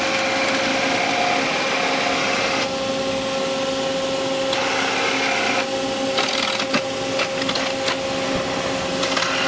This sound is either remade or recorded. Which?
recorded